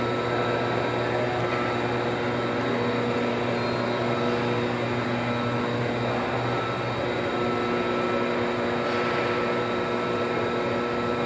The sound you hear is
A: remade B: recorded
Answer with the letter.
B